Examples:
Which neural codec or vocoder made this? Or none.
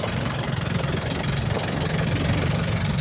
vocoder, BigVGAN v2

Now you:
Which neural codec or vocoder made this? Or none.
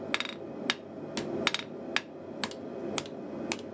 none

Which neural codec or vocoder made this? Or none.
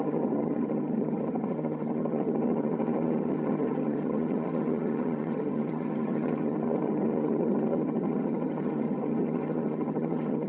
vocoder, HiFi-GAN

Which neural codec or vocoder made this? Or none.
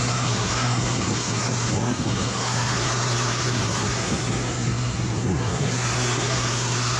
codec, SNAC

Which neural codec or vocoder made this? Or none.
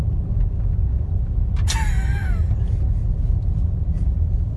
none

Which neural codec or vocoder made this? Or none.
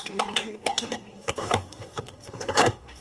codec, SNAC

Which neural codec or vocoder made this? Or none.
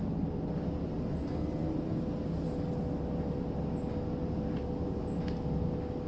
none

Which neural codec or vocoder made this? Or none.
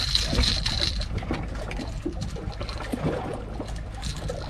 none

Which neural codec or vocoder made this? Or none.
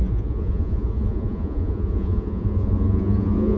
vocoder, Vocos